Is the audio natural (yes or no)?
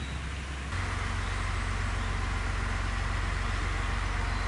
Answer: yes